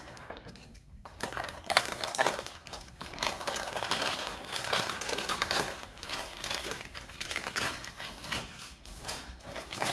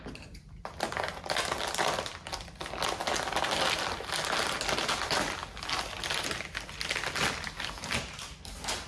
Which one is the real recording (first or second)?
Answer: second